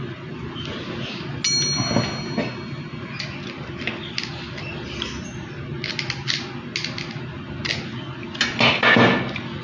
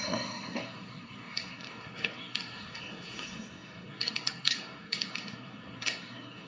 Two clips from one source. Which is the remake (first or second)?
second